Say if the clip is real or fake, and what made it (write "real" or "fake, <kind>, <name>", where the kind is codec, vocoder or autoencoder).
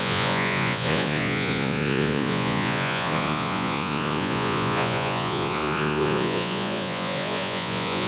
fake, vocoder, Vocos